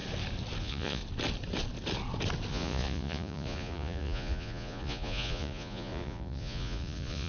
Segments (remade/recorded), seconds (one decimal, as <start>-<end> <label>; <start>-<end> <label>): 0.0-0.6 recorded; 0.6-1.0 remade; 1.0-2.5 recorded; 2.5-7.3 remade